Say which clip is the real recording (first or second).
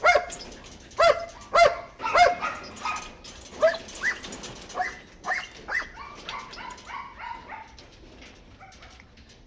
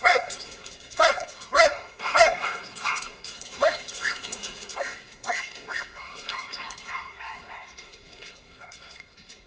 first